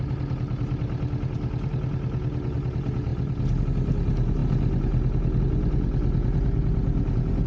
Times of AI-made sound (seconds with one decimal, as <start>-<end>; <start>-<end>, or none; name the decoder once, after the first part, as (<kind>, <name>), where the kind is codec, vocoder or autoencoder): none